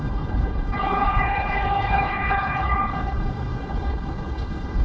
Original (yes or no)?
no